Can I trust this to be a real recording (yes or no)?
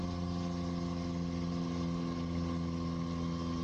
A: yes